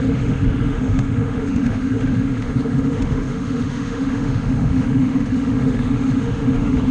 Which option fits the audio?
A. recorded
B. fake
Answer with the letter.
B